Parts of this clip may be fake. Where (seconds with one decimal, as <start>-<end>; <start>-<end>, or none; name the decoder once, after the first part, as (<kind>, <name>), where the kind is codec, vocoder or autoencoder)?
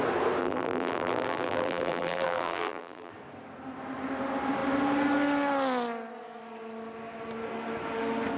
0.4-3.1 (vocoder, BigVGAN v2)